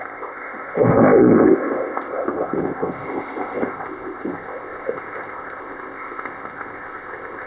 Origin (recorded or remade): remade